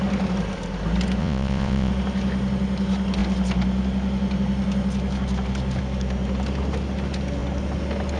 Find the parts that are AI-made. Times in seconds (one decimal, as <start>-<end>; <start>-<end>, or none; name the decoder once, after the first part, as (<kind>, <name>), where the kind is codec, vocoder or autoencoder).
1.2-1.9 (vocoder, Vocos)

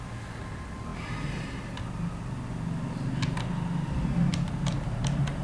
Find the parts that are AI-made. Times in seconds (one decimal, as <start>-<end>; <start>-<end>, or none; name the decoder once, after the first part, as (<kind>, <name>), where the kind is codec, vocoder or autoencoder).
4.3-5.0 (vocoder, BigVGAN v2)

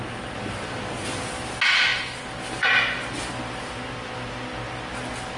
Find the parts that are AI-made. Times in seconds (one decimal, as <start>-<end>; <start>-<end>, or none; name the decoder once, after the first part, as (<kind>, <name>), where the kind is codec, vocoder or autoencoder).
none

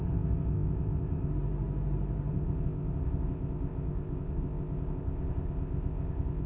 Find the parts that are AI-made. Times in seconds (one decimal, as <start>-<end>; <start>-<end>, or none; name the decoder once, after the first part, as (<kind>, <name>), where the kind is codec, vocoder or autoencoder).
0.0-1.3 (codec, ZipCodec); 2.3-6.5

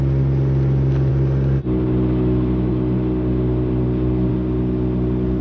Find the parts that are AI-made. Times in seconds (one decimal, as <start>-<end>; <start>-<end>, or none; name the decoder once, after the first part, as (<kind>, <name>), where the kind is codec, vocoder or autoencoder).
none